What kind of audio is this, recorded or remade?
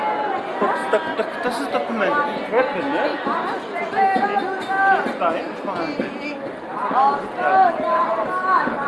recorded